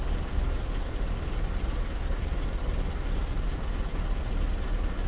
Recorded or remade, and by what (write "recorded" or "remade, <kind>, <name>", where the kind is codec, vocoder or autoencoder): recorded